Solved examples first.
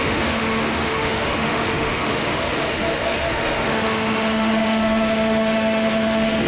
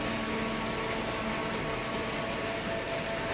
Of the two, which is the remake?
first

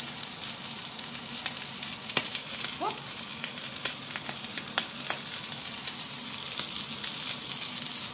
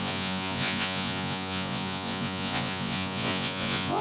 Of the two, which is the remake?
second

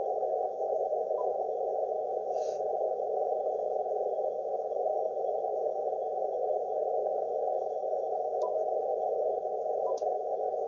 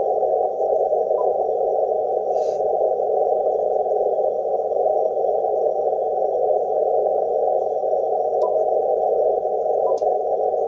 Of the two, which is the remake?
first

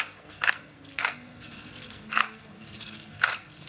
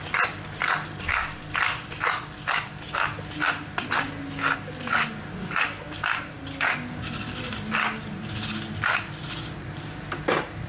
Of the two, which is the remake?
first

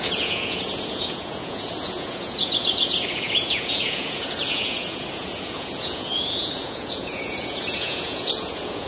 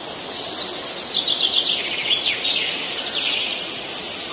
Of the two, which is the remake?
first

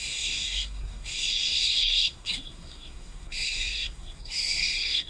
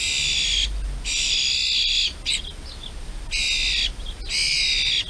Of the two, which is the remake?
first